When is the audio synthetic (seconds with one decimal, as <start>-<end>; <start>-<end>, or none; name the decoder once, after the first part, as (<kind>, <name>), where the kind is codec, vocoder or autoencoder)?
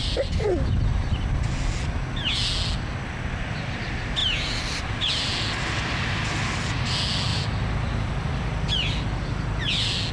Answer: 7.3-8.9 (vocoder, BigVGAN v2)